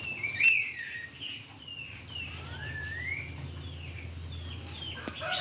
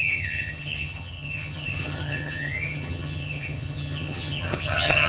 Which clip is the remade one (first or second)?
second